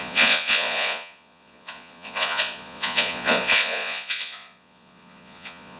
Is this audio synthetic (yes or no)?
yes